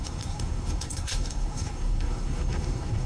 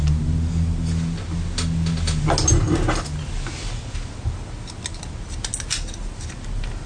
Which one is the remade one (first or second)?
first